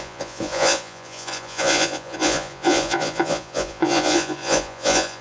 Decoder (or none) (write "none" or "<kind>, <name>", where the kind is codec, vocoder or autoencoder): vocoder, Vocos